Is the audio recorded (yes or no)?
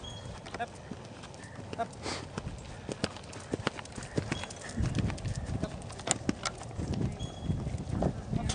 yes